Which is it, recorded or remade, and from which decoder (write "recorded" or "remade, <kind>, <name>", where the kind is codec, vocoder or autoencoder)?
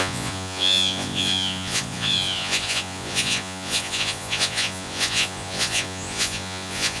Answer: remade, vocoder, Vocos